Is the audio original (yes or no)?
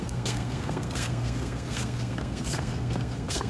no